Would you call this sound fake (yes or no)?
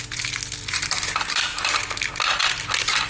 no